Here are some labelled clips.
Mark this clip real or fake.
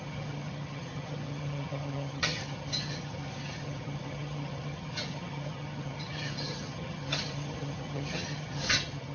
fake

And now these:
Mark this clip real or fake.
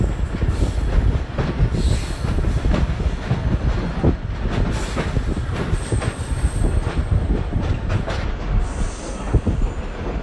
real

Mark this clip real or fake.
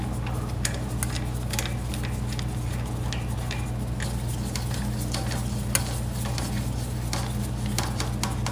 real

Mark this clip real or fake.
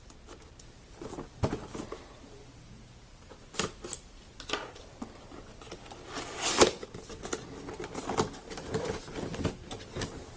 real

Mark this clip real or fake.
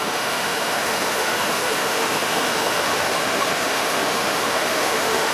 fake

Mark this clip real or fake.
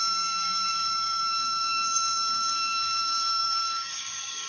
fake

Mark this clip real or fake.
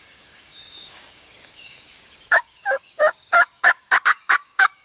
fake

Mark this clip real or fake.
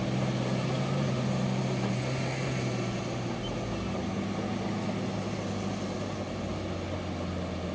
real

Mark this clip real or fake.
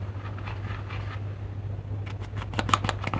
real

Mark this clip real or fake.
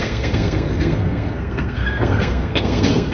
fake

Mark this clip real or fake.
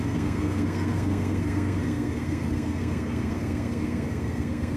fake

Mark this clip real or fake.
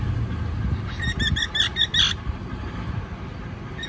real